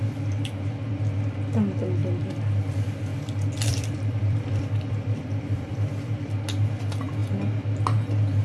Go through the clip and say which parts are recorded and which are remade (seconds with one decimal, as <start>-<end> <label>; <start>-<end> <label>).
0.0-3.1 recorded; 3.1-6.3 remade; 6.3-8.4 recorded